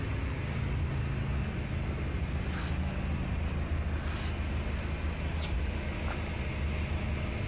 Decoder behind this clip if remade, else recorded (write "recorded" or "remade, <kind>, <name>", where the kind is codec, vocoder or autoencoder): recorded